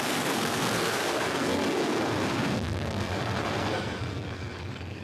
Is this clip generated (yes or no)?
yes